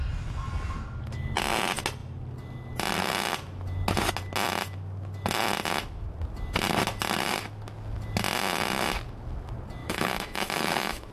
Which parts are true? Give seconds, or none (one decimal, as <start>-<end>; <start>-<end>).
0.0-9.8